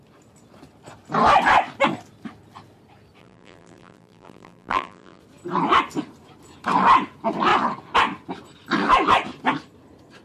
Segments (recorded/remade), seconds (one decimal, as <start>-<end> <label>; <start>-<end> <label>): 0.0-3.2 recorded; 3.2-5.2 remade; 5.2-10.2 recorded